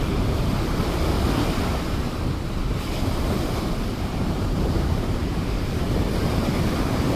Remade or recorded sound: remade